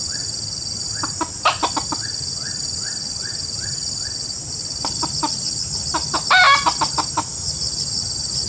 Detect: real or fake real